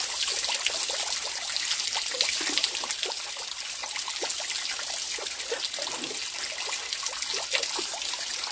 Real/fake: real